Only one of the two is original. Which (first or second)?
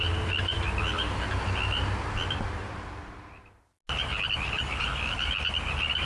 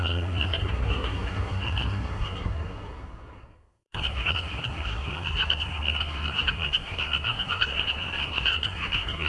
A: first